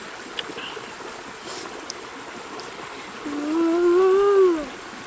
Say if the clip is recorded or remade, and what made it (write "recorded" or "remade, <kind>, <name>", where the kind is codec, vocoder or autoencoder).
recorded